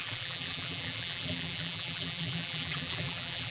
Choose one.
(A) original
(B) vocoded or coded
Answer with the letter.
B